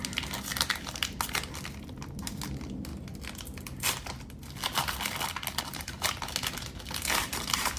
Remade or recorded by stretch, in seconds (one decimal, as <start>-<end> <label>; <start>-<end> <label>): 0.0-7.8 recorded